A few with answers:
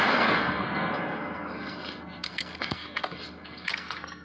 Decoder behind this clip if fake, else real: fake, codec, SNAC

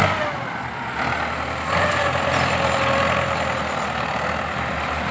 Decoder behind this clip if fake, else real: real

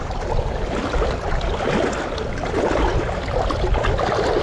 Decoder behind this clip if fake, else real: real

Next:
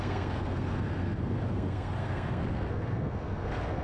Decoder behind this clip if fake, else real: fake, codec, SNAC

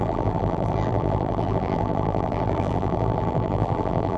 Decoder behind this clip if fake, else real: fake, vocoder, BigVGAN v2